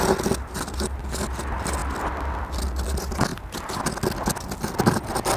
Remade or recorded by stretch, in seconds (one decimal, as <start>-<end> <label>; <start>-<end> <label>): 0.0-3.3 recorded; 3.3-3.8 remade; 3.8-5.4 recorded

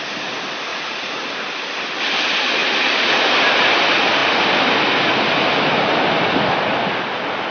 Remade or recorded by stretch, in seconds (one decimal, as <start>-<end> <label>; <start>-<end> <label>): 0.0-0.7 recorded; 0.7-1.3 remade; 1.3-7.5 recorded

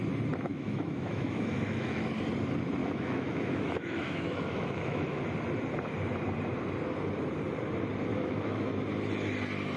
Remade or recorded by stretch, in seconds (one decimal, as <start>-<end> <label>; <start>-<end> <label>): 0.0-0.5 recorded; 0.5-2.1 remade; 2.1-2.8 recorded; 2.8-5.2 remade; 5.2-8.1 recorded; 8.1-8.7 remade; 8.7-9.8 recorded

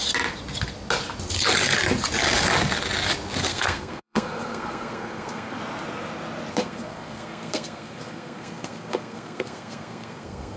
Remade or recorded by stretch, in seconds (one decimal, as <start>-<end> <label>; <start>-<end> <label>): 0.0-3.5 recorded; 3.5-5.6 remade; 5.6-6.5 recorded; 6.5-10.6 remade

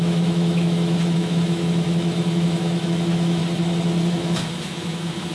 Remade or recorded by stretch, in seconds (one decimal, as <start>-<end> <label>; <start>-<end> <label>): 0.0-3.4 remade; 3.4-4.1 recorded; 4.1-5.3 remade

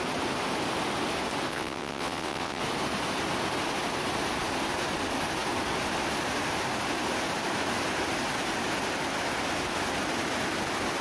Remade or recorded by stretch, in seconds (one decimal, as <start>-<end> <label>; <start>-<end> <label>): 0.0-1.5 recorded; 1.5-2.6 remade; 2.6-11.0 recorded

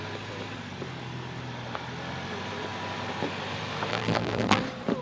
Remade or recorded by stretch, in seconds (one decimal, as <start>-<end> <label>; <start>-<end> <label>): 0.0-3.9 recorded; 3.9-4.6 remade; 4.6-5.0 recorded

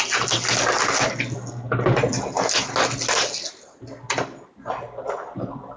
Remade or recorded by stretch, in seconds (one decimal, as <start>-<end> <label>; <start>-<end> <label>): 0.0-2.1 recorded; 2.1-2.7 remade; 2.7-5.8 recorded